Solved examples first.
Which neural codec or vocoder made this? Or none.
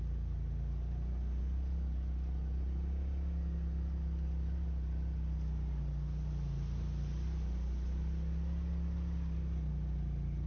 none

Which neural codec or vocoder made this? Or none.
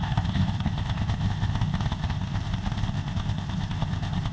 codec, ZipCodec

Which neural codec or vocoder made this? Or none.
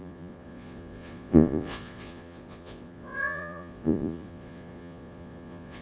vocoder, Vocos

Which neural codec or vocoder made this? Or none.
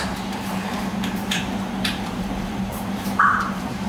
vocoder, BigVGAN v2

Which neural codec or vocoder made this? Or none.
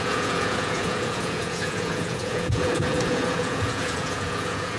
vocoder, Vocos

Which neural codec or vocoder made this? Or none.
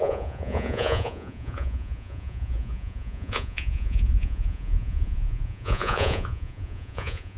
vocoder, Vocos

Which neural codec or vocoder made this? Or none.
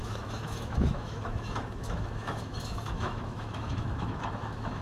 autoencoder, DAC-VAE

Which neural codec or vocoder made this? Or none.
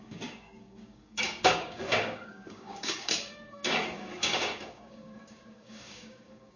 codec, DAC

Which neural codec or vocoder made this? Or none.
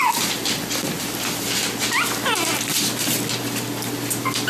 none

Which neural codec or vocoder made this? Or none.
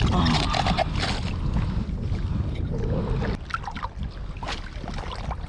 none